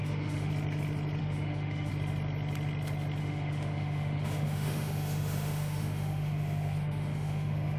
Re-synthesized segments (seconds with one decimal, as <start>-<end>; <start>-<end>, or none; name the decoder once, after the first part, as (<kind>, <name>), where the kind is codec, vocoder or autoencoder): 0.0-0.5 (autoencoder, DAC-VAE); 1.2-1.9; 3.2-7.8